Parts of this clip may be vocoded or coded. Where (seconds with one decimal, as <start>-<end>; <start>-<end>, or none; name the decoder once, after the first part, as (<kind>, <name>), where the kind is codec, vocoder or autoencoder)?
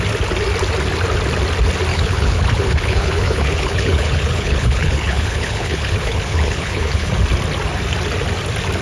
1.9-7.1 (codec, HILCodec)